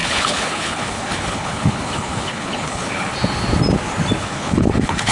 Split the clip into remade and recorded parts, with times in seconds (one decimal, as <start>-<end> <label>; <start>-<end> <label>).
0.0-3.1 remade; 3.1-4.2 recorded; 4.2-5.1 remade